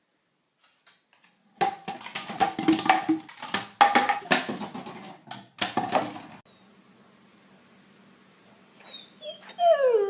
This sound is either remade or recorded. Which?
recorded